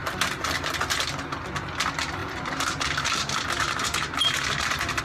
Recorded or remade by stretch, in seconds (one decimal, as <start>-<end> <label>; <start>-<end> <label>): 0.0-2.2 recorded; 2.2-5.0 remade